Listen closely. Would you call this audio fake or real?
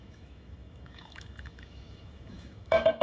fake